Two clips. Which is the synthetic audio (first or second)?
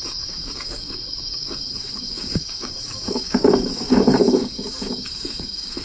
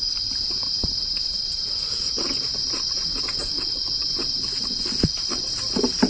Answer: first